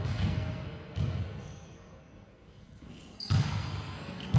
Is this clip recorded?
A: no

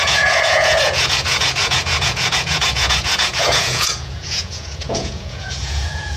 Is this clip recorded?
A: no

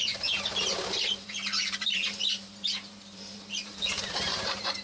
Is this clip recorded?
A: no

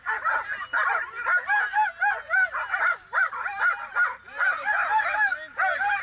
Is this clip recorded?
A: yes